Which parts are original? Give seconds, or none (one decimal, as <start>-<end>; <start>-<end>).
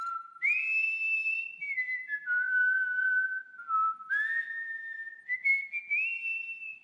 0.0-6.8